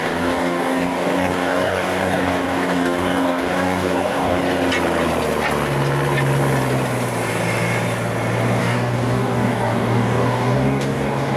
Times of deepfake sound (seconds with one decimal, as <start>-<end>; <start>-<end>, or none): 0.0-4.4; 8.6-11.4

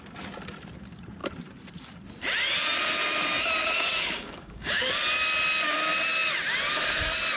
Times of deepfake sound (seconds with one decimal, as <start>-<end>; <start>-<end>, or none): 3.9-4.9